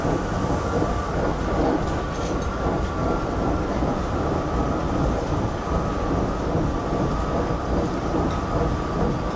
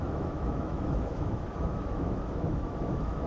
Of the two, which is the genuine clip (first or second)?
first